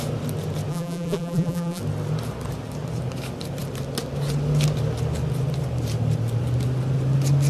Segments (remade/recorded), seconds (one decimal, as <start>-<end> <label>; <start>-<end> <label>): 0.0-0.7 recorded; 0.7-1.8 remade; 1.8-7.5 recorded